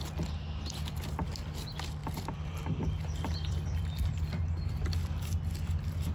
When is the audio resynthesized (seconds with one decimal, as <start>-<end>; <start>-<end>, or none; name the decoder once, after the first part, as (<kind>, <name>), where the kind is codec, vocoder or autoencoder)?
2.0-6.1 (vocoder, BigVGAN v2)